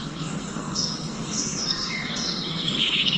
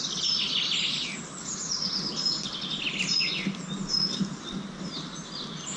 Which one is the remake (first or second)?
first